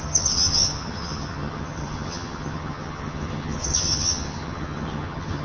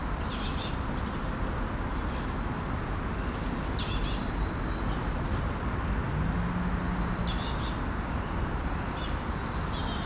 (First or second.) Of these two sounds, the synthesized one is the first